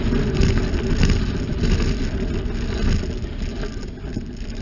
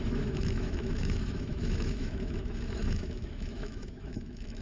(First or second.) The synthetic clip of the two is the second